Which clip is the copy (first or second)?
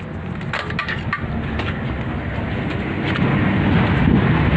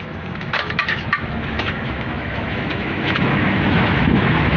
second